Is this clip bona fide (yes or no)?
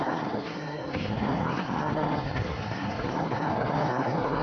no